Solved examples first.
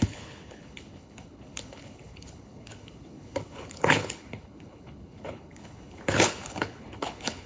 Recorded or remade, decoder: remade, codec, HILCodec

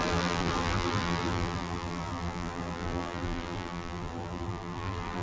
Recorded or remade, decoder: remade, vocoder, BigVGAN v2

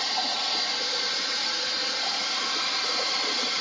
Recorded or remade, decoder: recorded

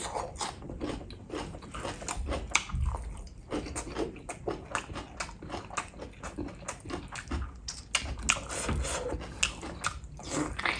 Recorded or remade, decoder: recorded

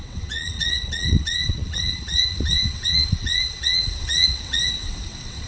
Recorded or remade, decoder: remade, vocoder, WaveNeXt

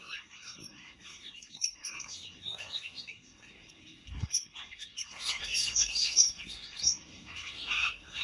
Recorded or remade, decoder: remade, codec, SNAC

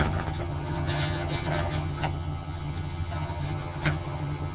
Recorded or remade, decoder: remade, vocoder, HiFi-GAN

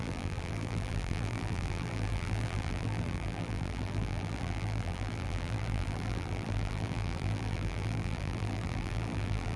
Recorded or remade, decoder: remade, vocoder, BigVGAN v2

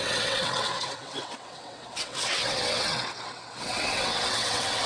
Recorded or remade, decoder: remade, vocoder, WaveNeXt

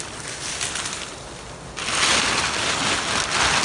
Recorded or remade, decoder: recorded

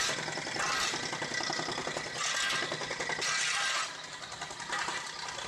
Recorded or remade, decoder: recorded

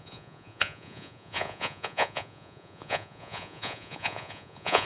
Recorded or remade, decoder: remade, vocoder, Vocos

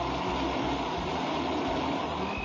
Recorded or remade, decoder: recorded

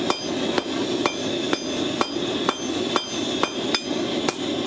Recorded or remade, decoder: recorded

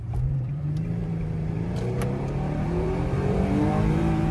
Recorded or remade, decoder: remade, vocoder, BigVGAN v2